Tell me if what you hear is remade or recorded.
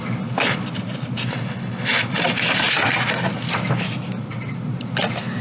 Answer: recorded